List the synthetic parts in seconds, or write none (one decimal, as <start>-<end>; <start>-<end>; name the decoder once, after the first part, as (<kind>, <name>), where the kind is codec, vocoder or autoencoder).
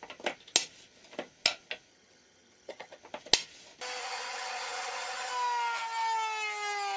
1.9-3.0 (vocoder, HiFi-GAN); 4.0-5.3